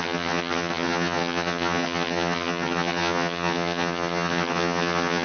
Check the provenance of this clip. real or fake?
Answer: fake